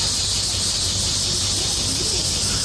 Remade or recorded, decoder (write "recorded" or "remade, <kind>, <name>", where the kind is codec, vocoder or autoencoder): recorded